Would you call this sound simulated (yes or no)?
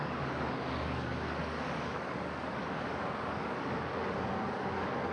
yes